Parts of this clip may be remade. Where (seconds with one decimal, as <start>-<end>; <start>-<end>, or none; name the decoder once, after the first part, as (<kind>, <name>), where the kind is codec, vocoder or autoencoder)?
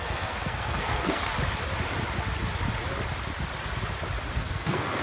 0.0-1.3 (codec, SNAC); 4.3-5.0